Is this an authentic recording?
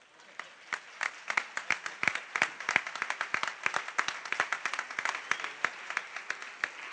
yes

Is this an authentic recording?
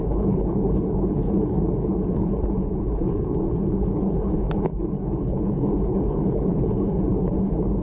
no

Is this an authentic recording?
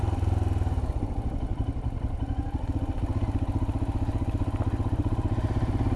yes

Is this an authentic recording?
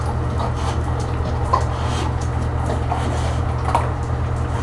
yes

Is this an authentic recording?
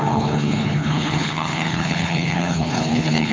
no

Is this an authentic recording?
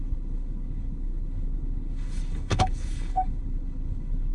no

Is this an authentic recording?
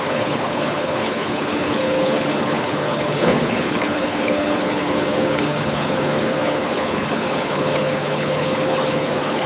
no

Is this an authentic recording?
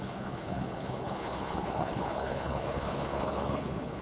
no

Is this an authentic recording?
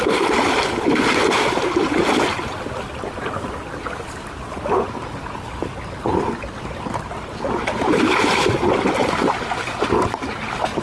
yes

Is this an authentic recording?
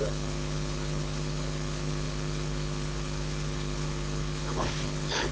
no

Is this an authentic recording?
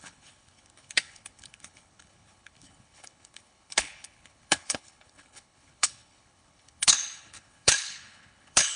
no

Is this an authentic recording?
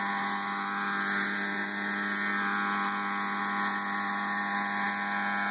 yes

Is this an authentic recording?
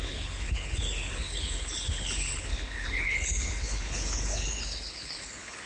no